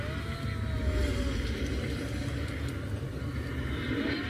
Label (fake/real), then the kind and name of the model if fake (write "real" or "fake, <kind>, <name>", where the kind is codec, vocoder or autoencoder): real